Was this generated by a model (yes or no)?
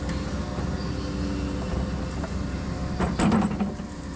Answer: no